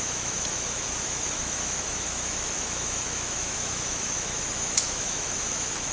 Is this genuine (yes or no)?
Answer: no